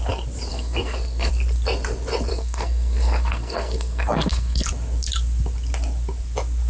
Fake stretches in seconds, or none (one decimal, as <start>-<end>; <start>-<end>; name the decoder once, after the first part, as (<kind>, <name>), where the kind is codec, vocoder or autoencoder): 0.5-1.3 (codec, SNAC); 2.3-4.7